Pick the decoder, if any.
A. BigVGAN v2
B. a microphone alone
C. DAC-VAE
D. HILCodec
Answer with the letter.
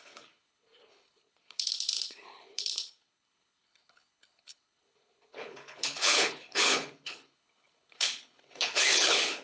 D